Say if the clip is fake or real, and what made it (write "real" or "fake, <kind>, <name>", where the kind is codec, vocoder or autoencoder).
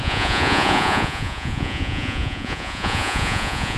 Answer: fake, vocoder, Vocos